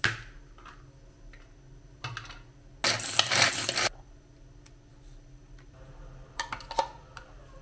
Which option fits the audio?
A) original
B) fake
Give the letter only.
A